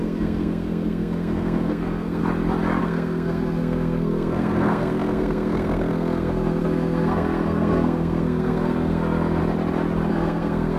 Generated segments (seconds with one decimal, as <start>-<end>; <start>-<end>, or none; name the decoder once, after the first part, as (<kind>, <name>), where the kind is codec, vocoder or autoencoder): 0.0-2.2 (codec, SNAC); 2.8-9.4; 10.1-10.8